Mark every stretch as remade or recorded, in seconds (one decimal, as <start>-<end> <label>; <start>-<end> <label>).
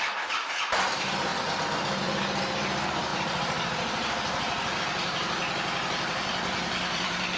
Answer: 0.0-1.3 remade; 1.3-2.0 recorded; 2.0-5.4 remade; 5.4-6.1 recorded; 6.1-7.4 remade